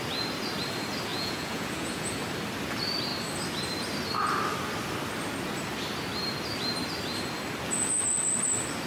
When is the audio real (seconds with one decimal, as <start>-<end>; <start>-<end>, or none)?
0.0-1.1; 2.1-8.9

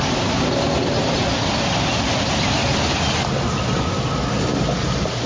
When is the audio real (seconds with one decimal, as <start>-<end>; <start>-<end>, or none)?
0.0-5.3

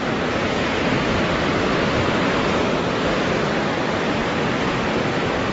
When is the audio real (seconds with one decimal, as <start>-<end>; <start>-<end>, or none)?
0.0-0.4; 0.9-5.5